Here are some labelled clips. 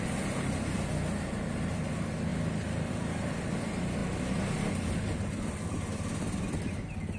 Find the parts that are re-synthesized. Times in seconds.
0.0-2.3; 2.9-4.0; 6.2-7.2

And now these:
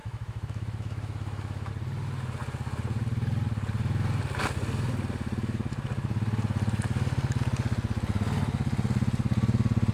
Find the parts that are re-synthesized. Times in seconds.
0.0-1.7

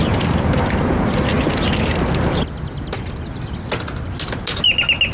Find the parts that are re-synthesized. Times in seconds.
none

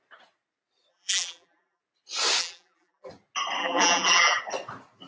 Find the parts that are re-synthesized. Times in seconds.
0.9-1.8; 2.4-3.1; 3.6-4.4

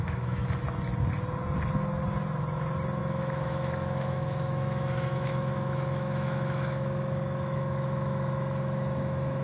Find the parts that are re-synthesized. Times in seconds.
0.0-0.4; 3.0-9.4

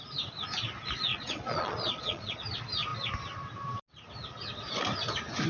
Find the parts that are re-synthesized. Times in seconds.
1.1-2.4

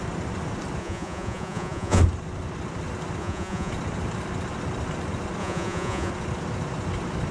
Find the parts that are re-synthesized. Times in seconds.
0.8-2.0; 3.2-3.7; 5.4-6.1

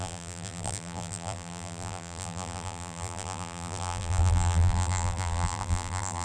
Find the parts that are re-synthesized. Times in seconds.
0.0-6.2